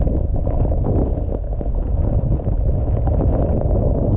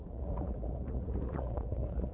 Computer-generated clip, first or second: second